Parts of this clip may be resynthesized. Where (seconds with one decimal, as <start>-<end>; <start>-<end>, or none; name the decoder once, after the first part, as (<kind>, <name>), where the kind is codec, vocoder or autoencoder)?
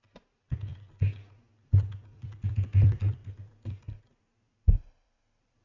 0.0-0.7 (vocoder, BigVGAN v2); 1.3-3.2; 4.2-5.6